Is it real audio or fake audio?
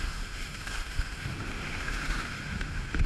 fake